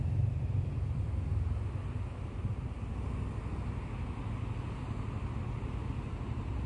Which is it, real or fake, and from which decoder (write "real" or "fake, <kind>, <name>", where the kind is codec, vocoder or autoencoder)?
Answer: real